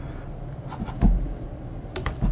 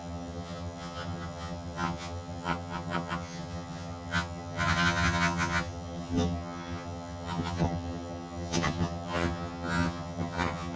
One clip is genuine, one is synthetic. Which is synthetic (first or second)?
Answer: second